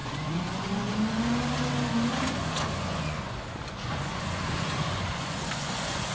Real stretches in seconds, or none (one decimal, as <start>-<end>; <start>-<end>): 0.9-2.1